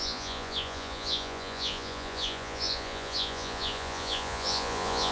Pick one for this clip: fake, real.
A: fake